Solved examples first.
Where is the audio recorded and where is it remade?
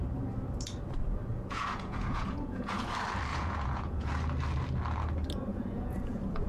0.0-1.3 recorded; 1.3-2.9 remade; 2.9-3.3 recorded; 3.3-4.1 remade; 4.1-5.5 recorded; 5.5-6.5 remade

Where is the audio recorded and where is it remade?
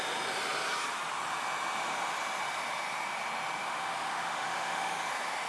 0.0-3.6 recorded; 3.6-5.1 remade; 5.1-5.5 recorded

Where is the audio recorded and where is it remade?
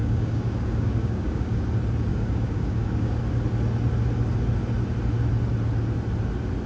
0.0-1.6 remade; 1.6-2.1 recorded; 2.1-3.2 remade; 3.2-6.7 recorded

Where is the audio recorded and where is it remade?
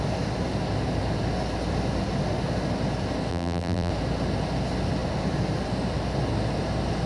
0.0-3.3 recorded; 3.3-3.9 remade; 3.9-7.1 recorded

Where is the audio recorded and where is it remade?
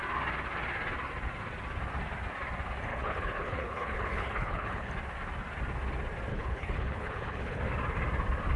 0.0-2.9 recorded; 2.9-4.9 remade; 4.9-6.3 recorded; 6.3-7.6 remade; 7.6-8.6 recorded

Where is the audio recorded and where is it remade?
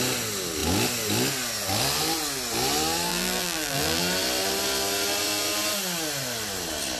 0.0-3.1 recorded; 3.1-4.0 remade; 4.0-7.0 recorded